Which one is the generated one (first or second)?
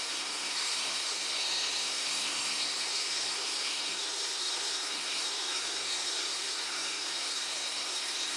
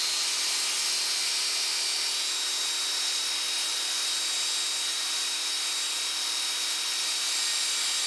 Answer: first